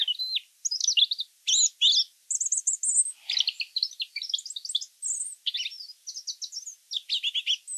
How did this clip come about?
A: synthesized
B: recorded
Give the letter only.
B